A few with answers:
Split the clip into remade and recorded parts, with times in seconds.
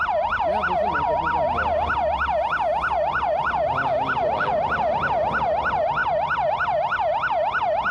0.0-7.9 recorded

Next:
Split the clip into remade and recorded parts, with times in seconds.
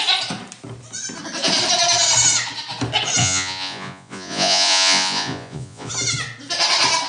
0.0-3.2 recorded; 3.2-5.9 remade; 5.9-7.1 recorded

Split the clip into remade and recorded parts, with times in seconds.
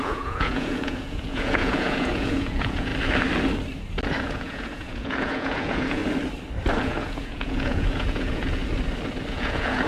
0.0-2.9 remade; 2.9-4.2 recorded; 4.2-6.0 remade; 6.0-6.8 recorded; 6.8-8.6 remade; 8.6-9.3 recorded; 9.3-9.9 remade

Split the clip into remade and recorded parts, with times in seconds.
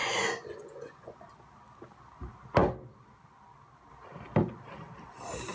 0.0-1.2 remade; 1.2-5.5 recorded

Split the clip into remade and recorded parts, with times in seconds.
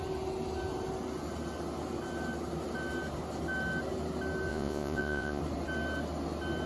0.0-4.5 recorded; 4.5-5.4 remade; 5.4-6.7 recorded